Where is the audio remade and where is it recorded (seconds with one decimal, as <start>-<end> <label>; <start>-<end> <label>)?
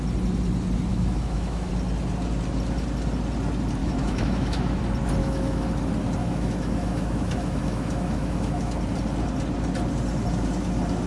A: 0.0-0.9 recorded; 0.9-1.7 remade; 1.7-3.8 recorded; 3.8-4.8 remade; 4.8-5.2 recorded; 5.2-5.7 remade; 5.7-6.2 recorded; 6.2-8.7 remade; 8.7-11.1 recorded